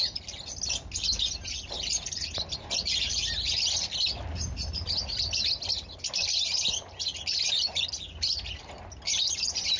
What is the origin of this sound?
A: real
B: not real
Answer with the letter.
A